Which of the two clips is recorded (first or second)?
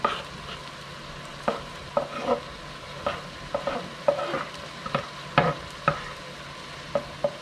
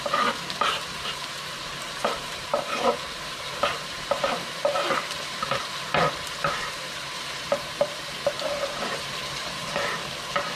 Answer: first